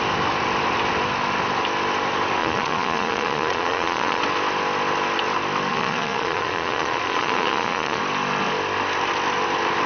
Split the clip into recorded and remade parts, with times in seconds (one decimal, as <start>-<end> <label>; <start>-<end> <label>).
0.0-2.4 recorded; 2.4-4.2 remade; 4.2-5.7 recorded; 5.7-8.0 remade; 8.0-9.9 recorded